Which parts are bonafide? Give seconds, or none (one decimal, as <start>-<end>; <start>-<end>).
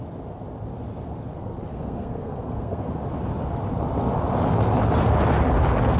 0.0-1.4; 2.9-6.0